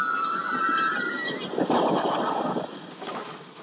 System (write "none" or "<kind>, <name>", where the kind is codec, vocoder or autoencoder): none